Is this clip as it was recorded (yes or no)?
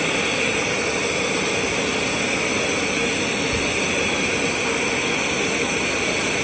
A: yes